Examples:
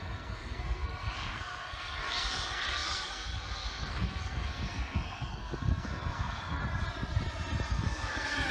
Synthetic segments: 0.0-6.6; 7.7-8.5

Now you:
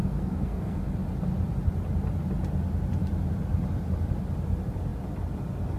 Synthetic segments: 0.0-0.8

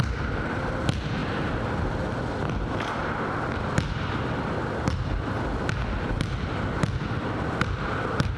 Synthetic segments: none

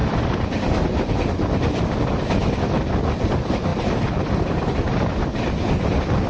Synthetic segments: 3.7-6.3